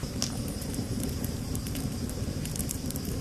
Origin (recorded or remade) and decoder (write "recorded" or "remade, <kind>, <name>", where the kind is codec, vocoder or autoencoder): remade, vocoder, BigVGAN v2